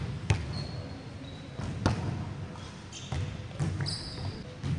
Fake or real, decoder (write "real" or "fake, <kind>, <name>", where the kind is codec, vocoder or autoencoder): real